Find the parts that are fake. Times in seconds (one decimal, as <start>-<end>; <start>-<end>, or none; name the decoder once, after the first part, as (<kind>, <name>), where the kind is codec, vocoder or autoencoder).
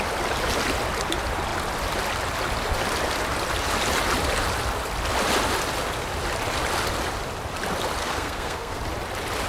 8.0-8.8 (codec, SNAC)